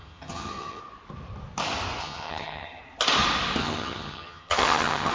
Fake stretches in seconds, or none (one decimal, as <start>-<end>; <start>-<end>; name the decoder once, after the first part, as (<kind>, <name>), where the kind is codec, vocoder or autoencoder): 0.0-0.8 (vocoder, HiFi-GAN); 2.0-2.8; 3.6-5.1